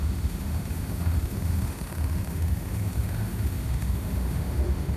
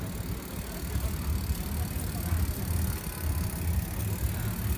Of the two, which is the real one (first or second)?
second